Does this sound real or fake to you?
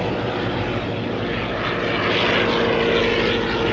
real